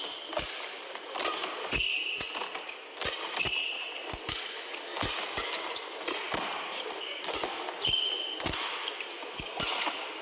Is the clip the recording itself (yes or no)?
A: yes